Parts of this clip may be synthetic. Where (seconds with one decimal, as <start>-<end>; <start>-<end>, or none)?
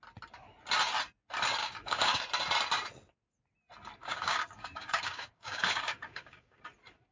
1.6-2.2; 4.0-6.6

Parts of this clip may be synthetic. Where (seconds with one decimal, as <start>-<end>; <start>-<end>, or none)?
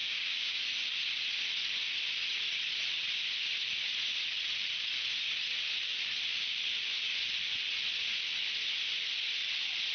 0.0-0.7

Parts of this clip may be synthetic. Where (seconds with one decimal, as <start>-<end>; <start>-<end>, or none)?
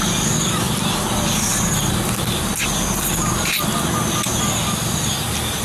none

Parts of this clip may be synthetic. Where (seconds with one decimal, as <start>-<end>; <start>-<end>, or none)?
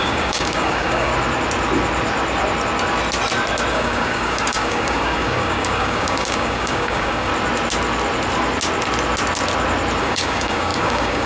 0.0-1.1; 3.7-7.3; 10.0-11.3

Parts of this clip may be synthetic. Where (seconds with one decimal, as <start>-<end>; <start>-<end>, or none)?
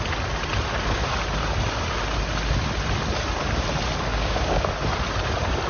4.1-4.7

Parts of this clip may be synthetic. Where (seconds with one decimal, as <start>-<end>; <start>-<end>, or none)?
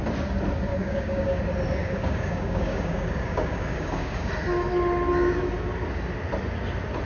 0.7-1.4; 1.8-4.3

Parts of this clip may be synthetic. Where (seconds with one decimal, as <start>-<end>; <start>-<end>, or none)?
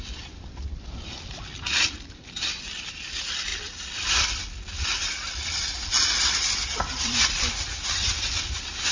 none